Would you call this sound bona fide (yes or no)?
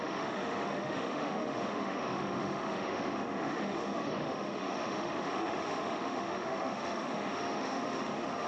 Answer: no